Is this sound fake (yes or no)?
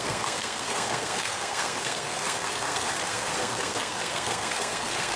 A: yes